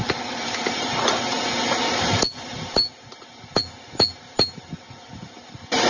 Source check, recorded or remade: recorded